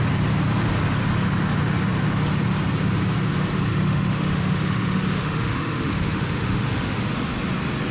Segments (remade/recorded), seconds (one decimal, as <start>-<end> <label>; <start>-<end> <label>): 0.0-3.7 recorded; 3.7-7.2 remade; 7.2-7.9 recorded